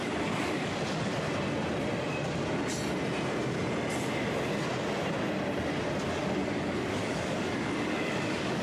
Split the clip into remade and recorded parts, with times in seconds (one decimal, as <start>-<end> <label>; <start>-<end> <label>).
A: 0.0-1.1 remade; 1.1-6.1 recorded; 6.1-8.6 remade